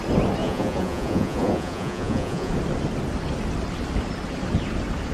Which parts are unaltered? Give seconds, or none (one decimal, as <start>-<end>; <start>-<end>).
0.0-0.4; 2.5-5.1